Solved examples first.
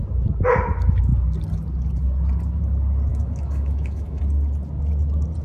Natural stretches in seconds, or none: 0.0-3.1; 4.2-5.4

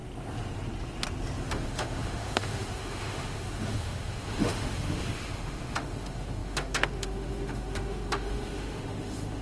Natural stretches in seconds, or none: 0.0-1.5

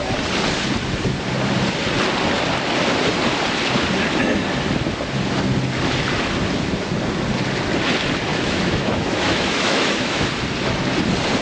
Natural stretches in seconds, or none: 0.0-8.3; 10.2-11.4

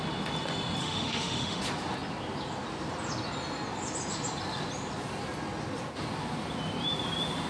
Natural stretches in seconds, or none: 0.0-0.8; 1.6-7.5

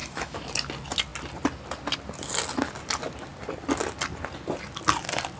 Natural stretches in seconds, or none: 0.5-5.4

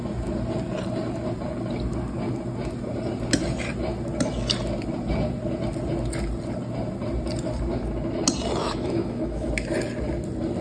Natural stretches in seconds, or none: 0.0-8.6; 9.5-10.6

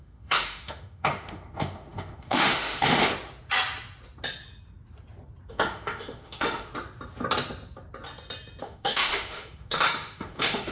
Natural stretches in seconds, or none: 3.1-5.5; 6.7-8.6